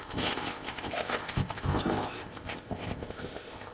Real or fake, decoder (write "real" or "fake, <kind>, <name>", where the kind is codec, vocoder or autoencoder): fake, codec, ZipCodec